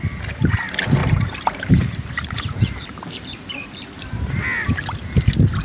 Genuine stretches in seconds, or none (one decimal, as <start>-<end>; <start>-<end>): 0.0-1.0; 4.4-5.6

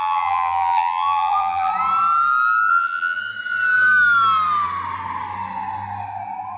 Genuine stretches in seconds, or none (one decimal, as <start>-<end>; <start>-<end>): 1.7-2.7; 3.2-6.6